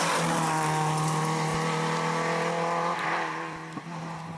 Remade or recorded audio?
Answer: recorded